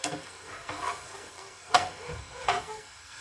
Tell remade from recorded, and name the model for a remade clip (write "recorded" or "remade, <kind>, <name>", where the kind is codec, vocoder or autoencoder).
remade, codec, SNAC